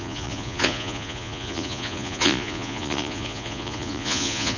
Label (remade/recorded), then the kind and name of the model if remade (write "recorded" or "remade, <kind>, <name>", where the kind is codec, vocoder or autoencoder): remade, vocoder, Vocos